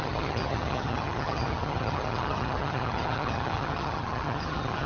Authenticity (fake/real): fake